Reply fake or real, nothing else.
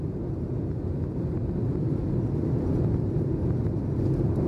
real